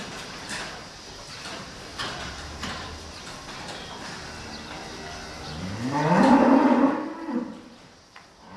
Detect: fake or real fake